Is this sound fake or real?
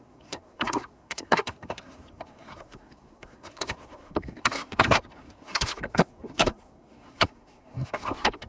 fake